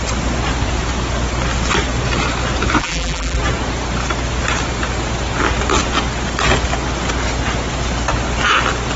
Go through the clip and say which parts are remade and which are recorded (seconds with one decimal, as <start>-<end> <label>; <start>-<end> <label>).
0.0-2.8 recorded; 2.8-3.4 remade; 3.4-9.0 recorded